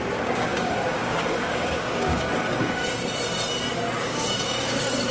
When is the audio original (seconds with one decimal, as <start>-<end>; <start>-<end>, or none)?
2.8-4.0